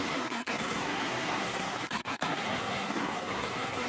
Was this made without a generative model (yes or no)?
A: no